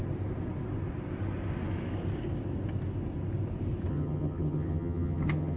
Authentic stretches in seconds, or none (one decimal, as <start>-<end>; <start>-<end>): 0.0-3.9